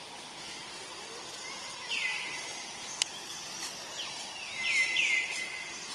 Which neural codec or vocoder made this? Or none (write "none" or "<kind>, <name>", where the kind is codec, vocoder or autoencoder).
none